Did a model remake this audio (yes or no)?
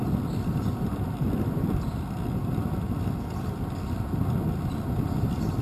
no